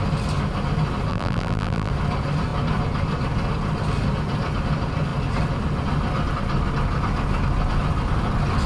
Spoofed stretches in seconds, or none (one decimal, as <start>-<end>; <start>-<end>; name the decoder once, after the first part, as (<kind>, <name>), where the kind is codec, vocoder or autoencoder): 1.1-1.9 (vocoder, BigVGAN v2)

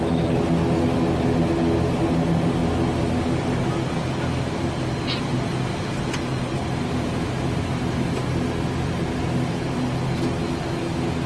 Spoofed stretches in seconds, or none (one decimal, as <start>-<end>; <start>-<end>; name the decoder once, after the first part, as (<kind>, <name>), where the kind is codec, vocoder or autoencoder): none

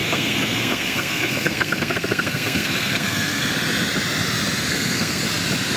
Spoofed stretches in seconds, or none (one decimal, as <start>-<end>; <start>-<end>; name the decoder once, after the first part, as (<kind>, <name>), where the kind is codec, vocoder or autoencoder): 0.0-3.5 (codec, SNAC); 4.7-5.2

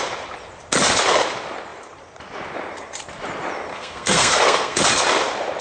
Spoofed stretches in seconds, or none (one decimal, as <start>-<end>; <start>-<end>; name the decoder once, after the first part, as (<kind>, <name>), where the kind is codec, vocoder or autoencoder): 3.7-4.8 (codec, SNAC)

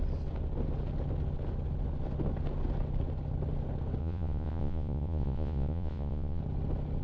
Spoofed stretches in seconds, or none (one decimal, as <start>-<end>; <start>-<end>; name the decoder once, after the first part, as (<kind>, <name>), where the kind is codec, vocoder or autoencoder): 4.0-6.4 (vocoder, Vocos)

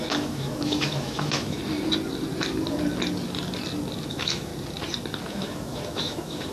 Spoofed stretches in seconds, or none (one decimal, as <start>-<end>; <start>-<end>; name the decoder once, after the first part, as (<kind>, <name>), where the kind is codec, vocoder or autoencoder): 0.0-1.6 (autoencoder, DAC-VAE); 4.1-4.5; 5.3-6.5

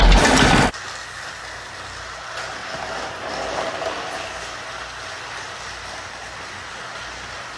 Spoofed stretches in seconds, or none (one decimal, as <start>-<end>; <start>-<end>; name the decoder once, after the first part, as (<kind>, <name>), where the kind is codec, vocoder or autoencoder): none